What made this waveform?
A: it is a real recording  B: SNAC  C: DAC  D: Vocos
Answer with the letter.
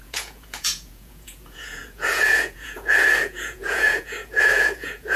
D